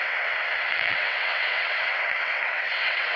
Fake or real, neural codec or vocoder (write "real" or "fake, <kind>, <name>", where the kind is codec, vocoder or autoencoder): fake, vocoder, WaveNeXt